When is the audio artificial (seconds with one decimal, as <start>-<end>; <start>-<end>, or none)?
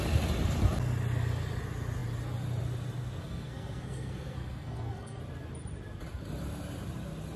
3.2-5.2